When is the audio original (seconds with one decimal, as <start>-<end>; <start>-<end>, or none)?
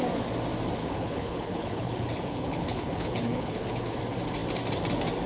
0.0-0.8; 4.0-5.3